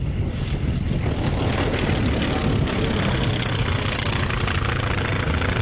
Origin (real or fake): real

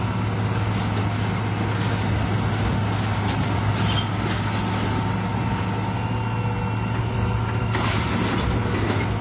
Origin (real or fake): real